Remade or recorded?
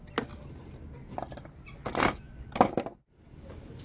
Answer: recorded